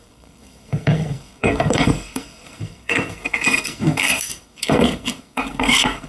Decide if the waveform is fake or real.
fake